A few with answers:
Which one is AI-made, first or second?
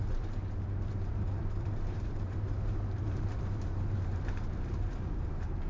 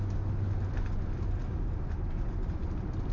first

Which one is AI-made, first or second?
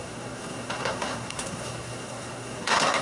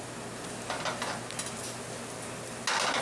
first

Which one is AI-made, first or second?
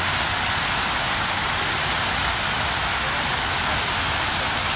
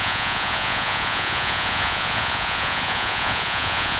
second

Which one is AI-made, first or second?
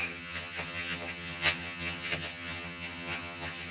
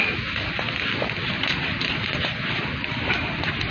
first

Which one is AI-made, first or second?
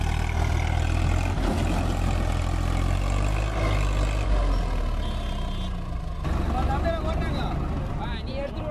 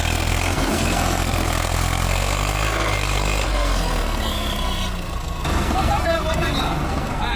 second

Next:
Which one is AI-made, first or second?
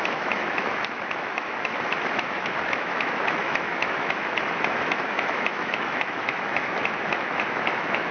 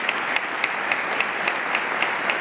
first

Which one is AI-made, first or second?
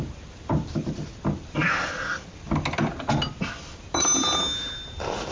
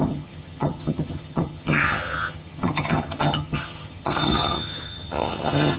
second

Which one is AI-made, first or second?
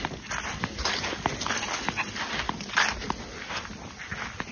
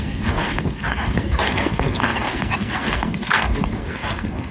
second